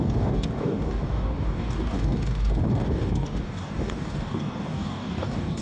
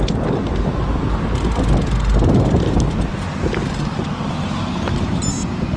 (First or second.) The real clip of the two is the second